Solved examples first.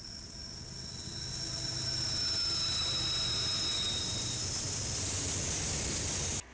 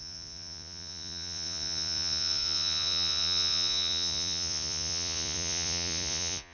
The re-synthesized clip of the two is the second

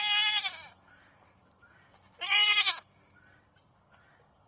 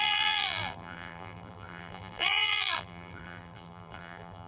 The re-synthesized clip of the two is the second